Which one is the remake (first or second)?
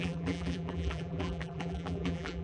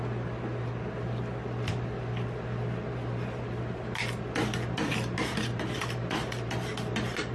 first